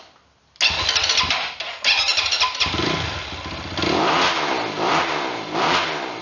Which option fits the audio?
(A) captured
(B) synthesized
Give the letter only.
A